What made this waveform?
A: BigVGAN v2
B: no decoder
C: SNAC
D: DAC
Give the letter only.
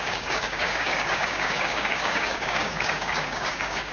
D